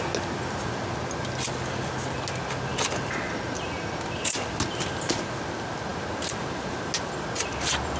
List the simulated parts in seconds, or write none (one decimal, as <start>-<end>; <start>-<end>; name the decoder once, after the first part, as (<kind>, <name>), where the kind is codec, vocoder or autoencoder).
none